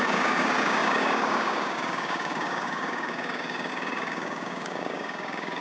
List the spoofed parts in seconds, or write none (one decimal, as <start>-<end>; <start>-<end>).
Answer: 0.0-5.6